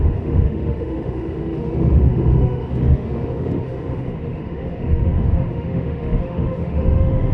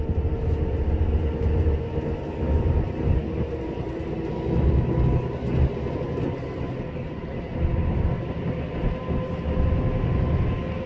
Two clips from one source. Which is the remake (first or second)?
first